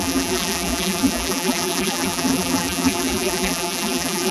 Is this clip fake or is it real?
fake